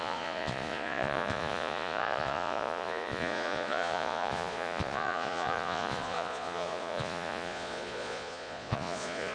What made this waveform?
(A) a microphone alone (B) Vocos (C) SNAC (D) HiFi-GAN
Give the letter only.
B